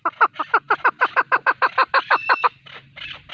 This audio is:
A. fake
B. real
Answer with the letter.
B